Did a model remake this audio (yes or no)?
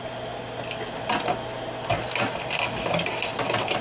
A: no